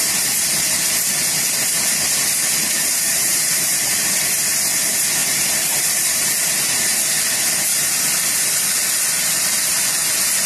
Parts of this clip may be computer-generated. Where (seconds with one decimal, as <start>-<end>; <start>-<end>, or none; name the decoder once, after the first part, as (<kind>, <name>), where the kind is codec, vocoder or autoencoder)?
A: 2.8-4.2 (vocoder, BigVGAN v2); 5.2-6.9